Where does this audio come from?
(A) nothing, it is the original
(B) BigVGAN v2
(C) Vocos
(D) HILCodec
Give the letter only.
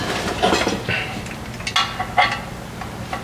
A